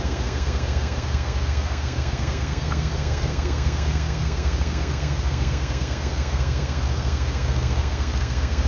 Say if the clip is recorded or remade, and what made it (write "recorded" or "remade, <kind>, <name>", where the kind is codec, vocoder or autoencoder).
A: remade, codec, SNAC